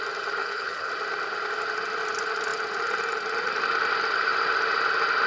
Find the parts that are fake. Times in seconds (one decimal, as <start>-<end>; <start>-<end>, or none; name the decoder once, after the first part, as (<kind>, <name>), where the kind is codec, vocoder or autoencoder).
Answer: 0.4-0.9 (codec, HILCodec)